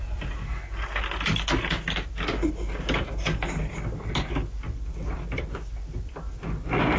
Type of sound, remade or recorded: recorded